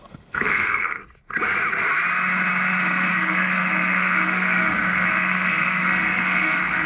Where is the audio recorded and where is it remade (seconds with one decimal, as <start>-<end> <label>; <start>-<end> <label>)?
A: 0.0-1.0 remade; 1.0-3.1 recorded; 3.1-6.9 remade